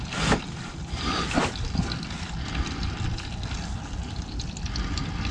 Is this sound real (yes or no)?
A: yes